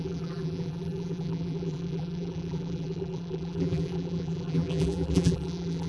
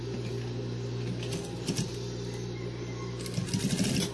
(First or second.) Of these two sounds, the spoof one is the first